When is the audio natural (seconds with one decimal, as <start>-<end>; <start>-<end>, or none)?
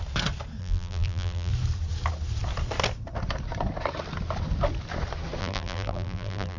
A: 0.0-0.6; 1.5-5.4